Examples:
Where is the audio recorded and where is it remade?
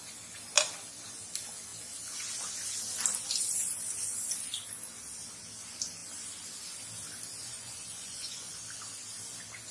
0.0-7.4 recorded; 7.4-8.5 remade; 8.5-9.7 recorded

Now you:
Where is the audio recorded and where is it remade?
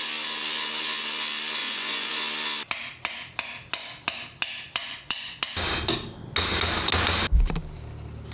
0.0-1.6 recorded; 1.6-2.1 remade; 2.1-4.8 recorded; 4.8-5.4 remade; 5.4-8.3 recorded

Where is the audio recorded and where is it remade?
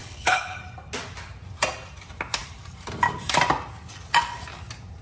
0.0-0.6 remade; 0.6-5.0 recorded